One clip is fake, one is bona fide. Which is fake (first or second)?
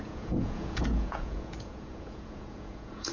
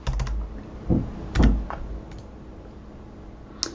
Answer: first